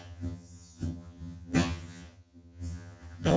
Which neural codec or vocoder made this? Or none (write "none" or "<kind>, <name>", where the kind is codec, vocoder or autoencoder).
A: vocoder, HiFi-GAN